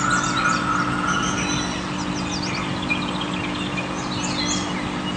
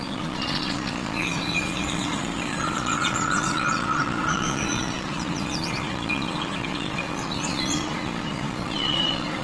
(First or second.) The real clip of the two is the first